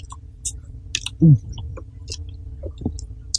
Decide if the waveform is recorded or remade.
recorded